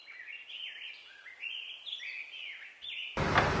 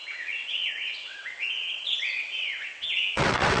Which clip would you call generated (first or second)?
second